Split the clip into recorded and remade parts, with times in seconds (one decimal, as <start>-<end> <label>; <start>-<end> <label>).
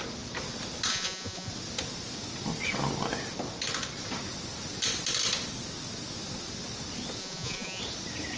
0.0-0.9 recorded; 0.9-1.5 remade; 1.5-7.2 recorded; 7.2-7.8 remade; 7.8-8.4 recorded